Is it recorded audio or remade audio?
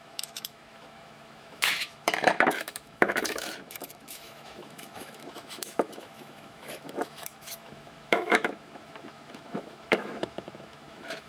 remade